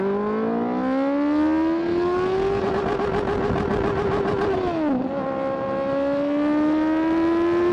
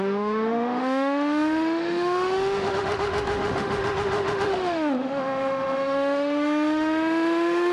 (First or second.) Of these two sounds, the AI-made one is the second